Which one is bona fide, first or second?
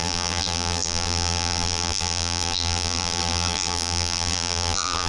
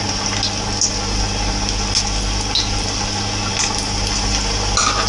second